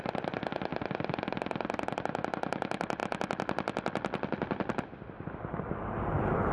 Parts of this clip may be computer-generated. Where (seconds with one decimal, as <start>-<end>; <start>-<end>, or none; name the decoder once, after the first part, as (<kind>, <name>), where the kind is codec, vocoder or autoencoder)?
none